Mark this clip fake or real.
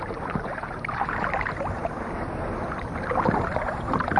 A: real